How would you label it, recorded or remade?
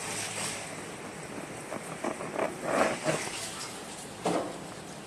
recorded